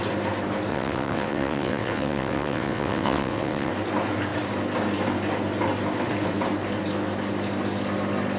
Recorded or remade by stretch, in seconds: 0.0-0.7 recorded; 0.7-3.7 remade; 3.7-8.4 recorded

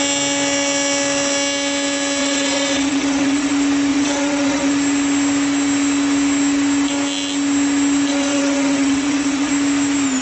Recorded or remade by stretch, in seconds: 0.0-2.2 recorded; 2.2-3.5 remade; 3.5-3.9 recorded; 3.9-4.7 remade; 4.7-8.1 recorded; 8.1-9.5 remade; 9.5-10.2 recorded

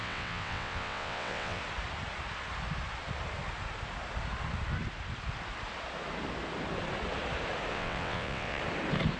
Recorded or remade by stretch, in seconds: 0.0-1.6 remade; 1.6-7.7 recorded; 7.7-8.6 remade; 8.6-9.2 recorded

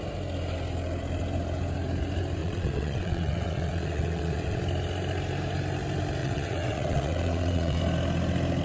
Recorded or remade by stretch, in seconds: 0.0-2.4 recorded; 2.4-4.6 remade; 4.6-6.2 recorded; 6.2-7.8 remade; 7.8-8.6 recorded

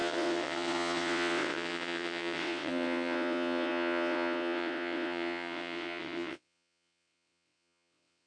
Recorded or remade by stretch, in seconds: 0.0-8.3 remade

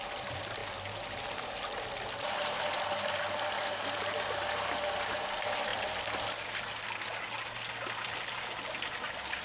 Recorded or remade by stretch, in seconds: 0.0-9.4 recorded

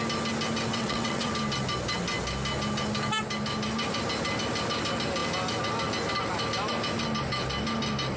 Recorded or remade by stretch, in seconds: 0.0-0.7 recorded; 0.7-1.3 remade; 1.3-8.2 recorded